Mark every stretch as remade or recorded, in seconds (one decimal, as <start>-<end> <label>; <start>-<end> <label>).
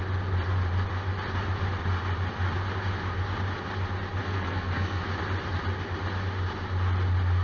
0.0-4.2 recorded; 4.2-5.0 remade; 5.0-7.4 recorded